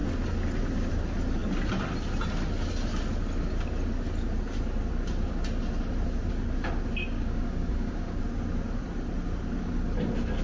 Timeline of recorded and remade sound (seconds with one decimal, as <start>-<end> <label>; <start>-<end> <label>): 0.0-7.0 recorded; 7.0-8.2 remade; 8.2-10.4 recorded